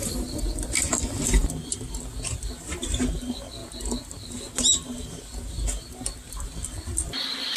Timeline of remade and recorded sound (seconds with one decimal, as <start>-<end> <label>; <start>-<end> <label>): 0.0-1.4 remade; 1.4-3.0 recorded; 3.0-3.6 remade; 3.6-6.3 recorded; 6.3-7.6 remade